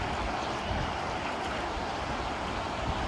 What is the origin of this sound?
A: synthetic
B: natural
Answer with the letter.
B